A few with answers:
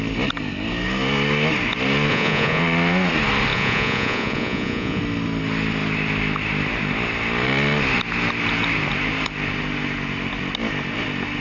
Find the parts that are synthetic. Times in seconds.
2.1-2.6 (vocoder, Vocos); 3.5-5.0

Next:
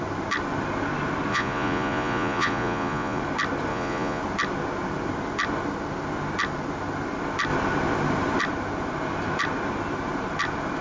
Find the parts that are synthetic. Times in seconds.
1.3-3.2 (vocoder, Vocos); 3.7-4.2

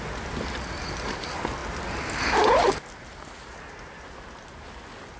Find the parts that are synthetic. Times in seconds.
none

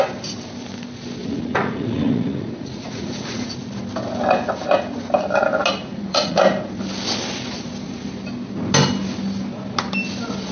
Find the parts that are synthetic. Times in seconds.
1.2-3.5 (vocoder, Vocos); 5.9-6.4

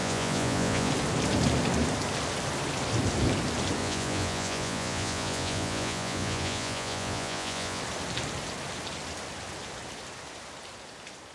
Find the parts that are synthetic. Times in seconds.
0.0-0.9 (vocoder, Vocos); 3.8-7.8

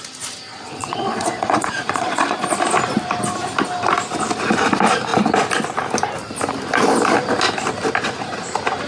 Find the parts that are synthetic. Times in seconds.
0.5-2.4 (vocoder, Vocos)

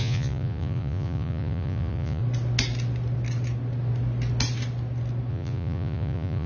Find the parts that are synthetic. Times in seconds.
0.0-2.2 (vocoder, Vocos); 5.3-6.5

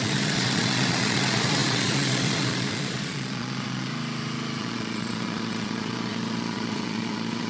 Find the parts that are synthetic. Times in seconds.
0.0-3.9 (vocoder, Vocos); 4.6-7.5